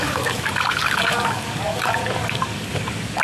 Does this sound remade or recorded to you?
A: remade